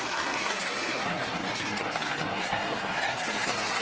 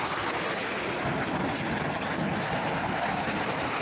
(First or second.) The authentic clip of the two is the second